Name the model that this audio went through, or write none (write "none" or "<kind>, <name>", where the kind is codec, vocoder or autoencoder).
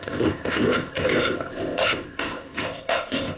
codec, ZipCodec